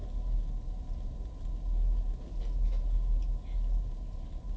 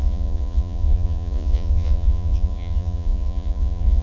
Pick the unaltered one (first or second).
first